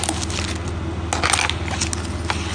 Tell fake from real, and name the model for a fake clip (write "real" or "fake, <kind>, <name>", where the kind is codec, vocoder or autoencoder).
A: real